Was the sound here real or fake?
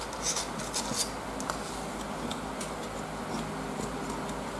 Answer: real